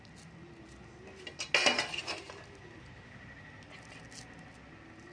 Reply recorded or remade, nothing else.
recorded